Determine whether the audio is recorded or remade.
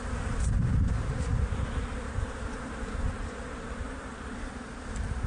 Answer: remade